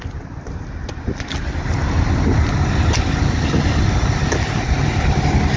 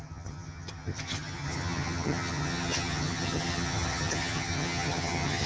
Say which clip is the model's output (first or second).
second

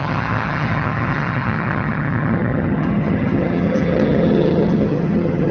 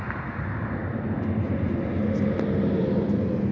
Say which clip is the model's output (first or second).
first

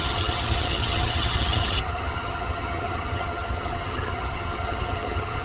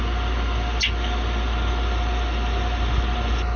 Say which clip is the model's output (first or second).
first